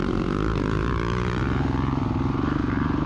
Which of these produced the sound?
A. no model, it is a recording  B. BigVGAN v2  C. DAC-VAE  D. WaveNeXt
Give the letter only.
B